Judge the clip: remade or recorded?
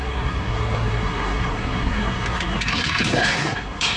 remade